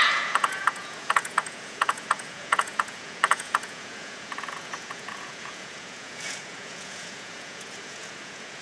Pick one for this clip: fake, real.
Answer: fake